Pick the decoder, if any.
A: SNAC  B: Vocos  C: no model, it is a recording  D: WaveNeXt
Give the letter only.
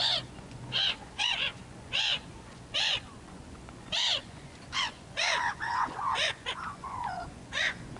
B